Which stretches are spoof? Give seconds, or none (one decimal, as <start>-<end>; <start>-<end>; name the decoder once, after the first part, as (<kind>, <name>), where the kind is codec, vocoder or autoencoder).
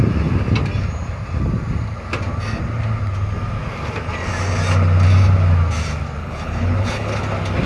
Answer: 6.2-7.2 (codec, HILCodec)